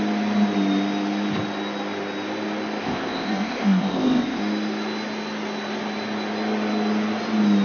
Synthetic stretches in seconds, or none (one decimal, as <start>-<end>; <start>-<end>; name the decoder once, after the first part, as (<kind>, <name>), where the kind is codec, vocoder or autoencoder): 2.8-4.4 (codec, ZipCodec)